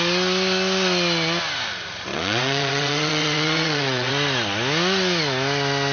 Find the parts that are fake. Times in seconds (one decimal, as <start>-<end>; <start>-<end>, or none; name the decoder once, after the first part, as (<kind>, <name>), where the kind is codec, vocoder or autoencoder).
2.1-4.1 (vocoder, WaveNeXt)